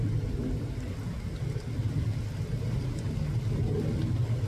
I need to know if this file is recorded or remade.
recorded